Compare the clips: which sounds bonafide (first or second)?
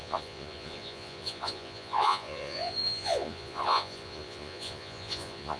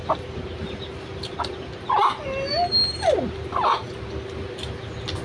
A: second